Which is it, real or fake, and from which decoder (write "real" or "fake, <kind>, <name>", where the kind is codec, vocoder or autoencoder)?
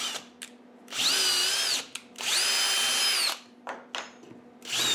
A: real